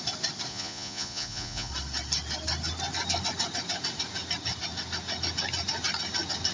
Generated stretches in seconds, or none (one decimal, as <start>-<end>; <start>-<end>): 0.5-1.7